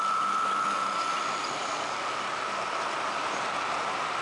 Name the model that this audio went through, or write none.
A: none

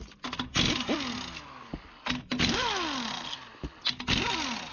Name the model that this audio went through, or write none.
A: none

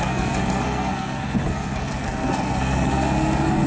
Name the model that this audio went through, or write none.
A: codec, SNAC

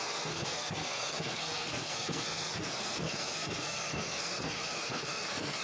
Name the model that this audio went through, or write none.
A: codec, SNAC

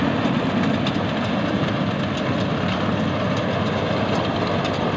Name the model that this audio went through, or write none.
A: none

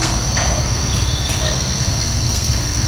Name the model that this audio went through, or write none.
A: codec, SNAC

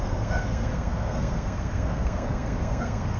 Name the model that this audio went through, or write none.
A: codec, SNAC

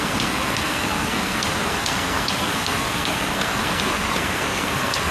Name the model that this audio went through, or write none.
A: codec, SNAC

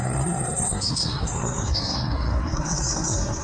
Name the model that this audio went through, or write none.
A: codec, SNAC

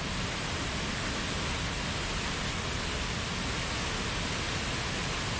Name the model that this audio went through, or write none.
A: none